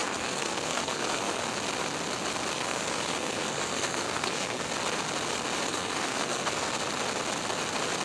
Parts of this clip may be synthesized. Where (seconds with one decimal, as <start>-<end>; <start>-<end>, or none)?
0.0-1.4; 2.5-4.7; 5.7-6.7